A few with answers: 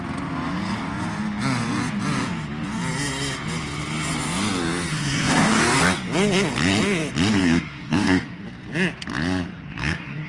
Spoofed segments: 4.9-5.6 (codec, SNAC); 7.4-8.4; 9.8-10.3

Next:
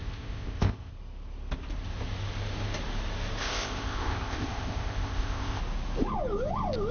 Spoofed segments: 0.0-0.9 (codec, ZipCodec); 3.4-5.6